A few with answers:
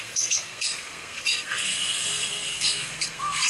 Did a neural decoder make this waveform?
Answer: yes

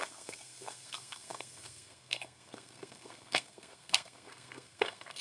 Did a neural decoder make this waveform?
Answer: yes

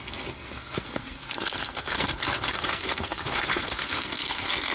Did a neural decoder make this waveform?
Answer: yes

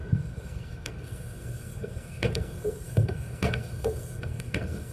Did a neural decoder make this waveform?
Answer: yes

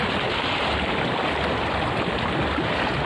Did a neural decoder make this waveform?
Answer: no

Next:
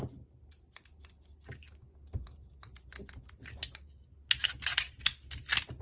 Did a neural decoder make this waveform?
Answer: no